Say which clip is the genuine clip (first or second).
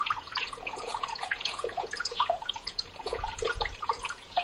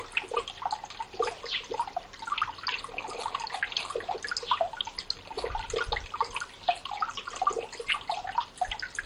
second